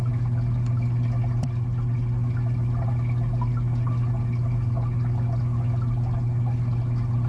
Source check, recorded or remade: recorded